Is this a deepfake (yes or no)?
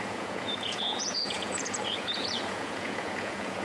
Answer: yes